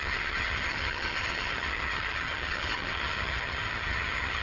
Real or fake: fake